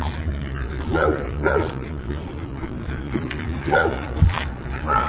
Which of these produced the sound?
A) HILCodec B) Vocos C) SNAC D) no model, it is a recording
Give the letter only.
B